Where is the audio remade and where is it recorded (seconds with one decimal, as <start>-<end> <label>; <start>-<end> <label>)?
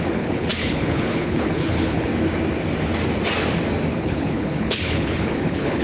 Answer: 0.0-2.1 remade; 2.1-3.9 recorded; 3.9-5.8 remade